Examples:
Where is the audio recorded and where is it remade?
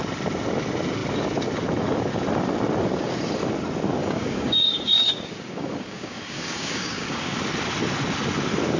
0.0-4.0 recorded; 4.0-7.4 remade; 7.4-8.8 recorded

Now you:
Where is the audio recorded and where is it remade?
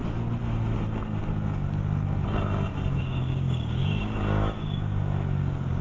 0.0-3.0 recorded; 3.0-5.8 remade